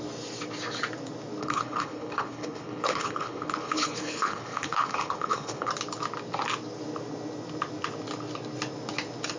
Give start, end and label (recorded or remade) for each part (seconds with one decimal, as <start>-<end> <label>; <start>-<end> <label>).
0.0-1.4 recorded; 1.4-5.7 remade; 5.7-9.4 recorded